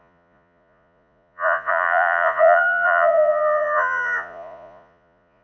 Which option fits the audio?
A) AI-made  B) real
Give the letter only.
A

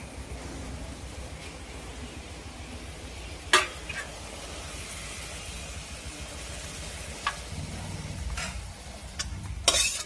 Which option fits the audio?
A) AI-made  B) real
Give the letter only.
B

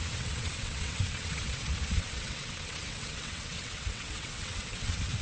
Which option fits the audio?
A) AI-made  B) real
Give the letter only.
A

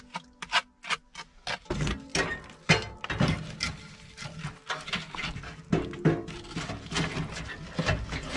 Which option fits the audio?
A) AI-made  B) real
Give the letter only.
B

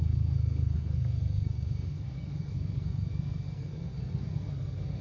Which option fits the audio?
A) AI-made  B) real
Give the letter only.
A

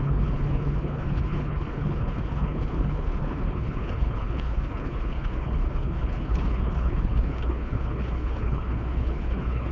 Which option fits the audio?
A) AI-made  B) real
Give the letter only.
A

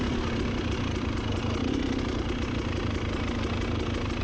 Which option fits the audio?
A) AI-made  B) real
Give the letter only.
B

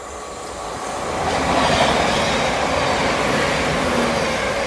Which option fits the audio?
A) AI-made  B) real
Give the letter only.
B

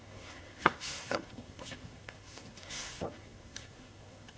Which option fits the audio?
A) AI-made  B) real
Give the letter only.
A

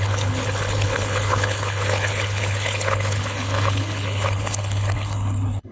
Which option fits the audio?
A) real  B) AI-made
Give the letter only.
B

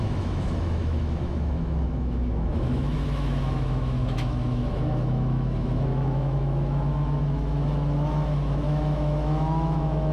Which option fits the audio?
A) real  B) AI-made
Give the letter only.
B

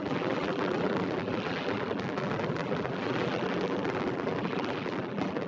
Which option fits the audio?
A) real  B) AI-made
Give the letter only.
B